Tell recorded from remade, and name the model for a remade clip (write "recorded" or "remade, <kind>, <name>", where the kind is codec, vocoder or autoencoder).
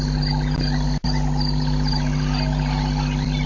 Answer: recorded